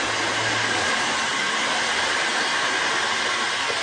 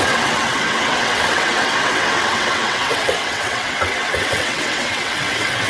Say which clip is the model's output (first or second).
second